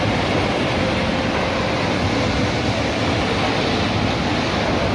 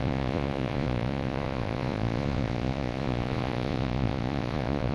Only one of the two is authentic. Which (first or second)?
first